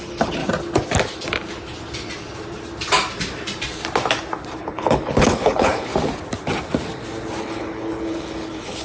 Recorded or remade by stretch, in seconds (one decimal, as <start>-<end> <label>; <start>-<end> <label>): 0.0-0.4 remade; 0.4-4.6 recorded; 4.6-5.9 remade; 5.9-7.4 recorded; 7.4-8.8 remade